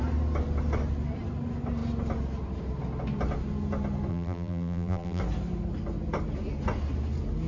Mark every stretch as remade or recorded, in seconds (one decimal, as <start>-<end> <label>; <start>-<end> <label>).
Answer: 0.0-4.1 recorded; 4.1-5.2 remade; 5.2-7.5 recorded